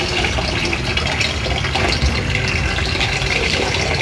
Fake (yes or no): no